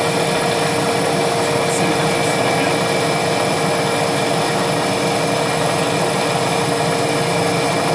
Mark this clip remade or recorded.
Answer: recorded